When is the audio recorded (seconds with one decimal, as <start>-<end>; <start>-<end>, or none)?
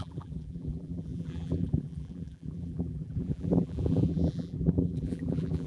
none